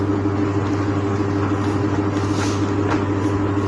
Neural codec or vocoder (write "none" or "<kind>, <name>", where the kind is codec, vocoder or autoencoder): none